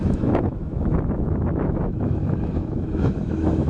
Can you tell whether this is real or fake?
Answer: fake